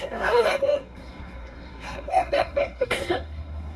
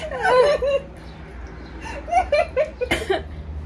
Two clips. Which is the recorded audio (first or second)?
second